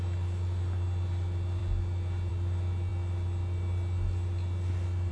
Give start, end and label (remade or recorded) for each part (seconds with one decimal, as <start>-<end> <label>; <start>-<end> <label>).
0.0-5.1 recorded